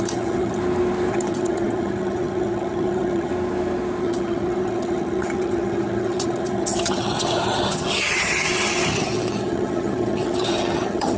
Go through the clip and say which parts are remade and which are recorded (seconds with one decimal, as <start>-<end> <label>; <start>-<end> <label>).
0.0-0.6 remade; 0.6-1.1 recorded; 1.1-3.3 remade; 3.3-4.0 recorded; 4.0-11.2 remade